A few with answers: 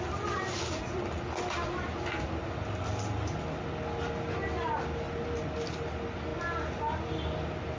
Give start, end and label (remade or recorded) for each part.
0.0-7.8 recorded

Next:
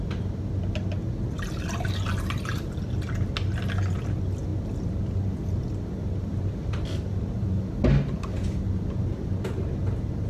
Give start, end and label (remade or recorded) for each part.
0.0-10.3 recorded

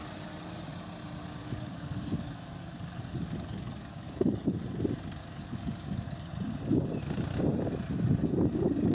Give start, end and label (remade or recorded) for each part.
0.0-1.4 recorded; 1.4-4.6 remade; 4.6-5.2 recorded; 5.2-6.2 remade; 6.2-8.9 recorded